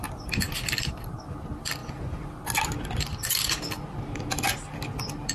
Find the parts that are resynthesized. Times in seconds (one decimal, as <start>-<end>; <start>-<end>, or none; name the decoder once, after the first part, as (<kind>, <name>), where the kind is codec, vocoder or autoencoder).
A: none